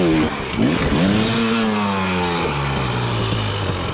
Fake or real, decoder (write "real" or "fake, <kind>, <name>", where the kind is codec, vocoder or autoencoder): real